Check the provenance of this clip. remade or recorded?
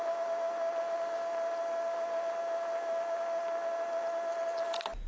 recorded